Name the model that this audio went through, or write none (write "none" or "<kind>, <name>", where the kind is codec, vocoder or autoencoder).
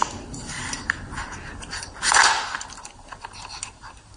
none